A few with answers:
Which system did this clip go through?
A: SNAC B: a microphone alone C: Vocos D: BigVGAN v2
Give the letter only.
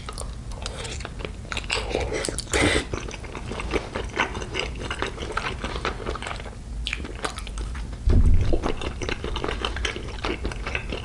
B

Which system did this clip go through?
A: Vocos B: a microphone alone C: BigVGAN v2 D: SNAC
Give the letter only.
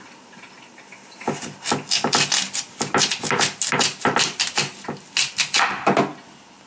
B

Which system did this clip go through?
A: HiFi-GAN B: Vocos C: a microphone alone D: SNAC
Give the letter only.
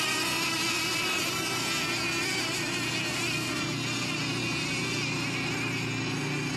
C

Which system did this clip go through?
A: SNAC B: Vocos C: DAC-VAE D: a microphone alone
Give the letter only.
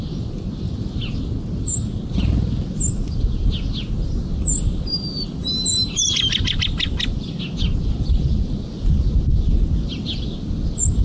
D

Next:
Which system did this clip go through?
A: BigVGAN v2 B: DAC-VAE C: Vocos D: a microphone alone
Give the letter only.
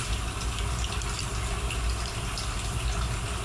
D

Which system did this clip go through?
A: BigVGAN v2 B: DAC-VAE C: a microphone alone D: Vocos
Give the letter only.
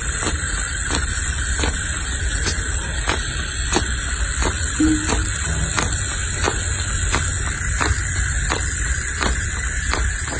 C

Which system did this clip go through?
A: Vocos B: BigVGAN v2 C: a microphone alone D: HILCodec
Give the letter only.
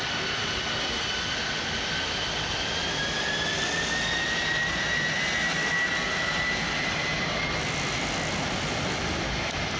C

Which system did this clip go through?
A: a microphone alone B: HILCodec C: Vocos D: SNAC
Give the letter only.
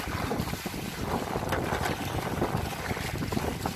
A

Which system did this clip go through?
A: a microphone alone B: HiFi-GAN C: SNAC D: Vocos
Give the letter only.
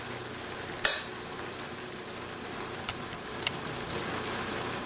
A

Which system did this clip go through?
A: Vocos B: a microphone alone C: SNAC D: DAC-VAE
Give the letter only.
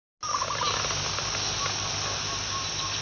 B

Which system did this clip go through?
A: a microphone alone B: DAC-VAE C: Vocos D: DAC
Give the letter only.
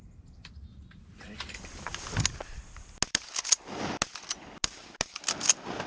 A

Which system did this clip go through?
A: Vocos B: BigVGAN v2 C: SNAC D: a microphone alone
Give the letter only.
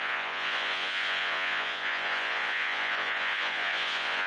A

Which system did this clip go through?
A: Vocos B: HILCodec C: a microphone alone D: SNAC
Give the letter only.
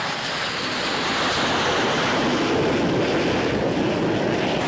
C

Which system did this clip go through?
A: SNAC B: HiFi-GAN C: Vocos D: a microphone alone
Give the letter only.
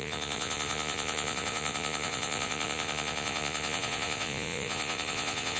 C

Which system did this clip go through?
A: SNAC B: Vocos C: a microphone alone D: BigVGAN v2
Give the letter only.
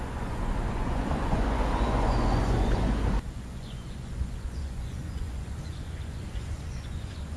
B